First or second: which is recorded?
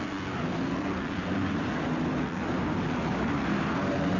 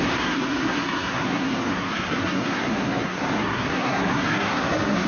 first